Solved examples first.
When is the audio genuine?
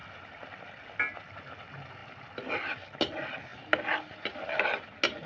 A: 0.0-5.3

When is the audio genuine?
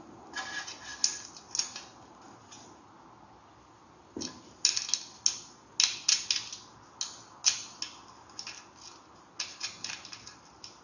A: 0.0-10.8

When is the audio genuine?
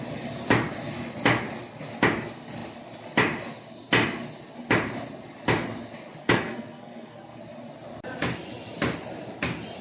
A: 0.0-6.2; 7.4-9.8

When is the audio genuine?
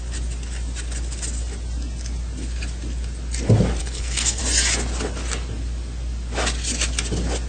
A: 0.0-3.8; 4.4-7.5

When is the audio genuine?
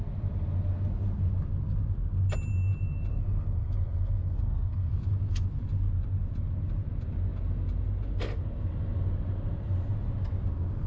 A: 0.0-3.1; 4.9-10.9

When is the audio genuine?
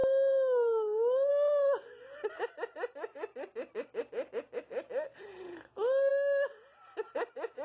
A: 1.3-7.6